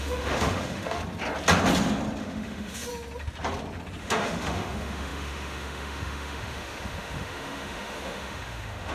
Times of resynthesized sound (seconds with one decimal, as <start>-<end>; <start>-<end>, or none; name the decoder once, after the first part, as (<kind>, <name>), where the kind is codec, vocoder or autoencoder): 0.0-1.0 (autoencoder, DAC-VAE); 2.2-2.9; 4.0-8.9